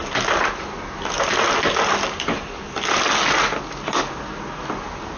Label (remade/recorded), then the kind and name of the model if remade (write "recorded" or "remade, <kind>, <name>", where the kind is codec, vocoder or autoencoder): recorded